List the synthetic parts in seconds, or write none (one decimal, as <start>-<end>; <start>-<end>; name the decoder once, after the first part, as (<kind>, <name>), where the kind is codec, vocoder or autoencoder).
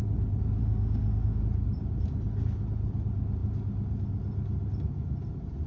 0.6-1.4 (autoencoder, DAC-VAE)